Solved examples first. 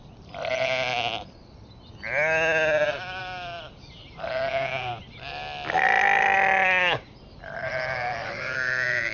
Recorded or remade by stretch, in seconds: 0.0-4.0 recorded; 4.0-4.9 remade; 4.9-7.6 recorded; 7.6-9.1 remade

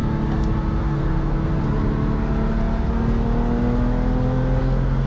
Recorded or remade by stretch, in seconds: 0.0-0.8 recorded; 0.8-1.5 remade; 1.5-4.6 recorded; 4.6-5.1 remade

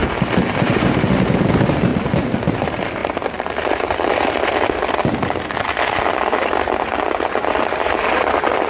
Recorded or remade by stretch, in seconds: 0.0-3.0 recorded; 3.0-4.6 remade; 4.6-8.7 recorded

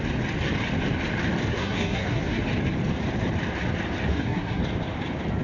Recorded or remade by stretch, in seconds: 0.0-1.5 recorded; 1.5-2.4 remade; 2.4-4.1 recorded; 4.1-4.6 remade; 4.6-5.4 recorded

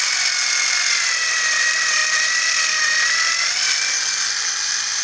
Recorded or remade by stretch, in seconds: 0.0-5.0 recorded